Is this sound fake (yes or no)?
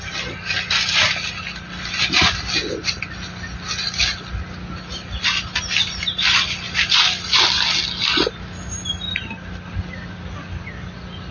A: no